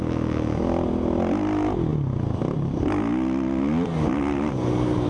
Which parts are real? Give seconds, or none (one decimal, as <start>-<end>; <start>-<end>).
0.0-5.1